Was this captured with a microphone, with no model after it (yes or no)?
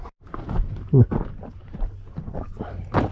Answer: no